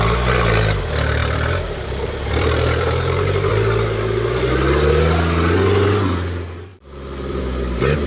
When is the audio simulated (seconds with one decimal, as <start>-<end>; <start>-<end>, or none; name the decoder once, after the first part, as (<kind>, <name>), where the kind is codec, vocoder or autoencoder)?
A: 1.2-3.5 (vocoder, BigVGAN v2); 6.7-7.4